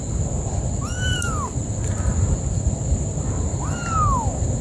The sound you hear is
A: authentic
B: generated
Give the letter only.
A